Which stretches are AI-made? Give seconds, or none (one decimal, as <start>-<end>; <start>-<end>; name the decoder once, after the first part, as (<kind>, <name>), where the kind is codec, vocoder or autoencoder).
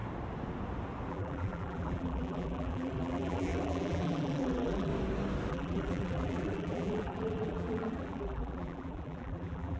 1.1-4.9 (vocoder, BigVGAN v2); 5.5-9.8